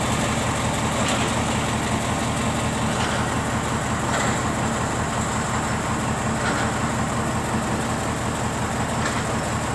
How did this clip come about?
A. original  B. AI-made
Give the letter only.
A